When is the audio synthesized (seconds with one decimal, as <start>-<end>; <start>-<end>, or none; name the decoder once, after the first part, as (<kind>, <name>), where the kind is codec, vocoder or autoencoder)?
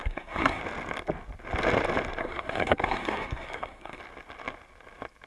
0.0-0.6 (codec, SNAC); 2.2-4.0